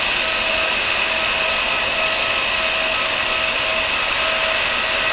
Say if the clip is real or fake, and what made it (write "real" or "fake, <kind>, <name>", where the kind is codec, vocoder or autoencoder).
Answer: real